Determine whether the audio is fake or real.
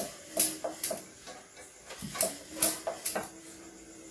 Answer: real